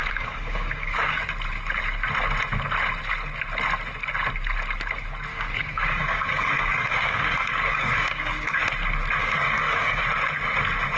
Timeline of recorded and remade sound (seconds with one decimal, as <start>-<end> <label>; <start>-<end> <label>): 0.0-1.2 remade; 1.2-5.3 recorded; 5.3-8.6 remade; 8.6-9.2 recorded; 9.2-10.0 remade; 10.0-11.0 recorded